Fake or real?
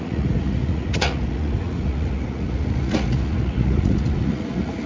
fake